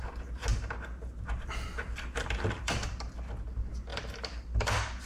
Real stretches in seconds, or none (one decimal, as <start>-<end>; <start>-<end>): 0.0-0.5; 3.1-3.9